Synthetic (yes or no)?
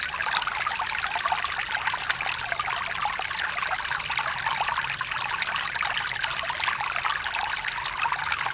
no